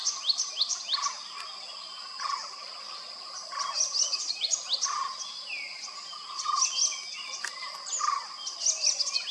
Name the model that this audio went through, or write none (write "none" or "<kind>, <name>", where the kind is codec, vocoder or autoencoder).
none